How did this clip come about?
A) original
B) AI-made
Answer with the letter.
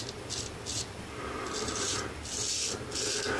A